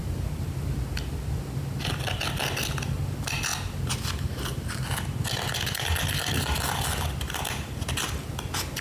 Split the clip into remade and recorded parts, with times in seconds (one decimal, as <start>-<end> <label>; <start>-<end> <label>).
0.0-3.5 recorded; 3.5-5.2 remade; 5.2-8.8 recorded